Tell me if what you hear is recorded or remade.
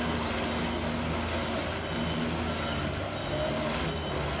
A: recorded